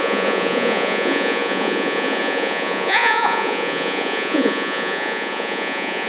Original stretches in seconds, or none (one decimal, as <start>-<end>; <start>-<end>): none